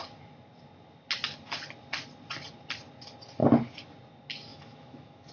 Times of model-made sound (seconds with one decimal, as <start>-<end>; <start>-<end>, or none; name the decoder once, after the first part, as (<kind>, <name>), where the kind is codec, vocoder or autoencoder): 4.5-5.3 (autoencoder, DAC-VAE)